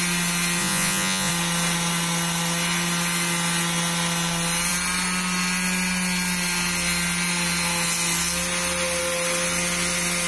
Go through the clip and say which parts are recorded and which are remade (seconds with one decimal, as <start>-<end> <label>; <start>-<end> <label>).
0.0-0.6 recorded; 0.6-1.3 remade; 1.3-10.3 recorded